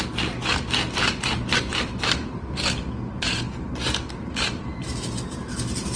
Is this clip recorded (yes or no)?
yes